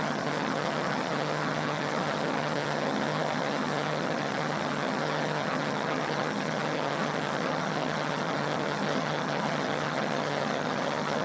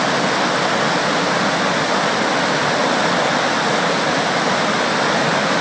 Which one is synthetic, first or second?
first